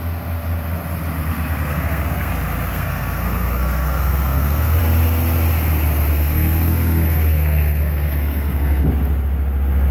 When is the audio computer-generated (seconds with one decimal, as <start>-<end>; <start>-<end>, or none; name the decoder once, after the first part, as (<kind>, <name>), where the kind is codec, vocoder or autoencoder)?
1.3-2.3 (codec, SNAC); 2.7-4.8; 6.1-8.9